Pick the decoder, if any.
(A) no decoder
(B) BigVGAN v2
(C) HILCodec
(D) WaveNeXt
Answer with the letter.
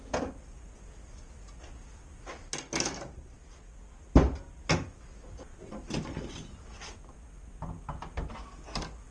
A